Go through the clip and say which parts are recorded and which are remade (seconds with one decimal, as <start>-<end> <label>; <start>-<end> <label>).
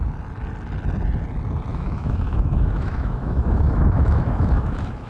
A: 0.0-1.7 recorded; 1.7-5.1 remade